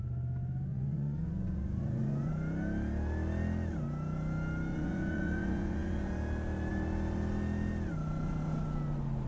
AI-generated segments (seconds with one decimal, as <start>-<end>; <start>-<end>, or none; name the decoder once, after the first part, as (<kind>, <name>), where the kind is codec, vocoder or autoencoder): 0.7-2.3 (vocoder, Vocos); 4.7-6.1